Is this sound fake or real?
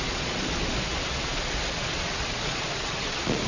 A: fake